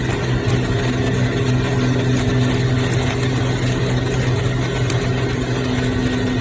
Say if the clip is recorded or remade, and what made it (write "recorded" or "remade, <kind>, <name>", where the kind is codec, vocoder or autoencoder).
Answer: recorded